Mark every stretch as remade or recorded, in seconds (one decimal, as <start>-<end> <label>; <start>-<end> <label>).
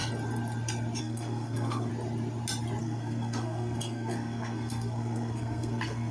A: 0.0-1.0 recorded; 1.0-1.9 remade; 1.9-2.8 recorded; 2.8-6.1 remade